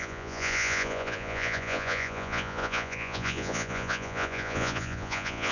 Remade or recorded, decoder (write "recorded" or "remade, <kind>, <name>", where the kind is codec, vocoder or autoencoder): remade, vocoder, Vocos